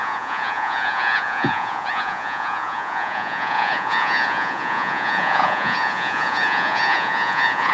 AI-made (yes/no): yes